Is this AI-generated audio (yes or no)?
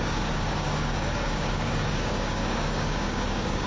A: yes